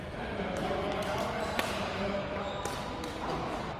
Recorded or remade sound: recorded